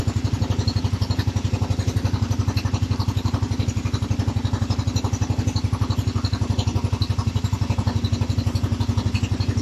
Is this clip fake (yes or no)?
no